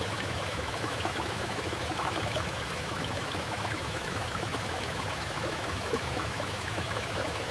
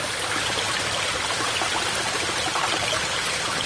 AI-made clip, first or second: first